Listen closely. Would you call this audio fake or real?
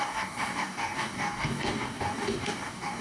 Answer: fake